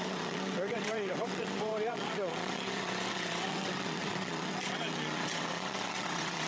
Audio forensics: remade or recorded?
remade